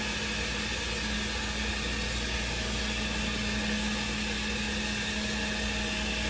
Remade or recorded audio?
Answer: recorded